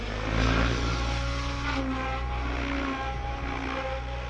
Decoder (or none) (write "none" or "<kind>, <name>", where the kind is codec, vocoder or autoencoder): none